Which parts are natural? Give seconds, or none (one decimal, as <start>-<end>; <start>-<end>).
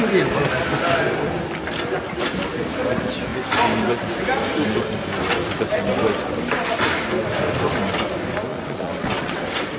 0.0-8.5; 9.4-9.8